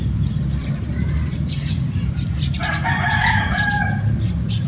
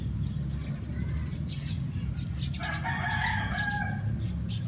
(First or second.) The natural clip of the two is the second